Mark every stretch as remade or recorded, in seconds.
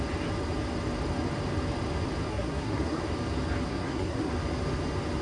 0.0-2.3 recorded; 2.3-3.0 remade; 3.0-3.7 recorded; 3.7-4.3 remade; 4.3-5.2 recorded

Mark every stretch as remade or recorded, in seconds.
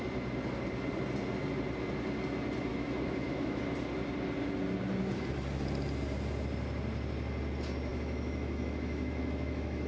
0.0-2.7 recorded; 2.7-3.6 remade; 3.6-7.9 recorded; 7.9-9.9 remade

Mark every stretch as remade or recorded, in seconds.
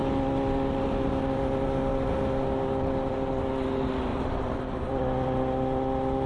0.0-4.1 recorded; 4.1-5.0 remade; 5.0-6.3 recorded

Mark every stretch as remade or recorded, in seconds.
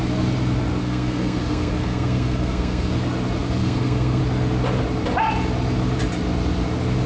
0.0-0.8 recorded; 0.8-2.9 remade; 2.9-3.6 recorded; 3.6-4.2 remade; 4.2-7.1 recorded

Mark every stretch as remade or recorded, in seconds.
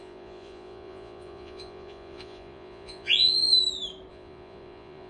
0.0-3.5 remade; 3.5-4.1 recorded; 4.1-5.1 remade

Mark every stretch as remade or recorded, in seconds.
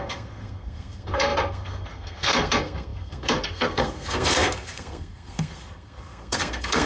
0.0-6.9 remade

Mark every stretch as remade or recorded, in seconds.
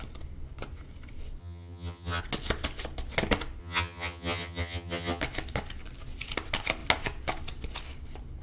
0.0-1.4 recorded; 1.4-2.2 remade; 2.2-3.6 recorded; 3.6-5.2 remade; 5.2-8.4 recorded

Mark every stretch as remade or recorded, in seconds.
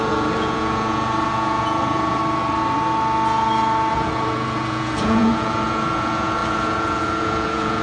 0.0-2.2 remade; 2.2-3.9 recorded; 3.9-7.8 remade